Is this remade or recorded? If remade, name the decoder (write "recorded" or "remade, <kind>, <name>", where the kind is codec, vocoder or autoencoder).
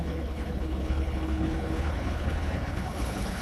remade, codec, HILCodec